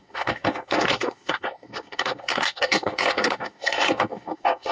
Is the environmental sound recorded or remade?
remade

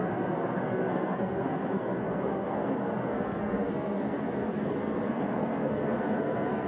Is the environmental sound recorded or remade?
remade